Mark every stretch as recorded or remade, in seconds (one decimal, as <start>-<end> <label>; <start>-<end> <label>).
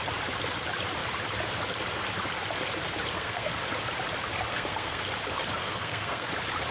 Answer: 0.0-3.1 recorded; 3.1-3.6 remade; 3.6-4.5 recorded; 4.5-5.0 remade; 5.0-5.6 recorded; 5.6-6.3 remade; 6.3-6.7 recorded